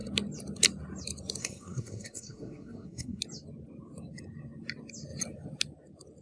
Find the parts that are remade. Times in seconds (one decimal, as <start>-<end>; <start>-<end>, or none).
1.4-3.2